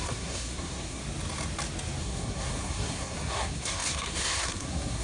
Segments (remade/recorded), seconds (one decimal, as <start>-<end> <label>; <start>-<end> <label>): 0.0-1.0 remade; 1.0-2.0 recorded; 2.0-5.0 remade